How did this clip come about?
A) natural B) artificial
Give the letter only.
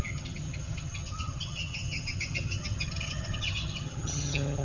B